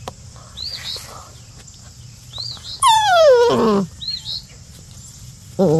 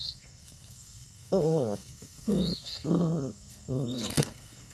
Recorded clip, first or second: first